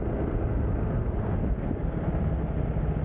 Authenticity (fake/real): real